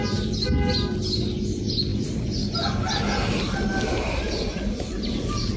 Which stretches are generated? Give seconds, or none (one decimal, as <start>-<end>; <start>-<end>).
none